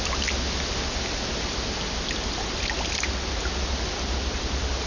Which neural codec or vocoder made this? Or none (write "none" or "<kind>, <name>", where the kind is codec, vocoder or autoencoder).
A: none